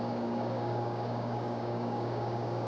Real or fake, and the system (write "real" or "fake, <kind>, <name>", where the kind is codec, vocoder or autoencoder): fake, codec, DAC